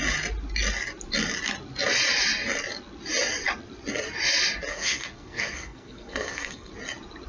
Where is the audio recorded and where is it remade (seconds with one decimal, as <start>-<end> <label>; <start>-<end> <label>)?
0.0-4.7 recorded; 4.7-6.7 remade; 6.7-7.3 recorded